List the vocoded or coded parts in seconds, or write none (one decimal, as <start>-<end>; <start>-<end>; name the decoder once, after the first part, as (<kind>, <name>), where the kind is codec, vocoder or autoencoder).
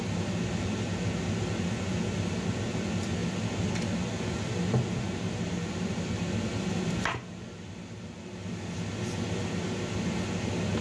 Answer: none